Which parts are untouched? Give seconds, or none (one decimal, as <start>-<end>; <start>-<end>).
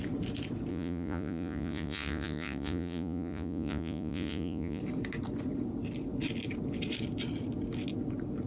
0.0-0.7; 4.8-8.5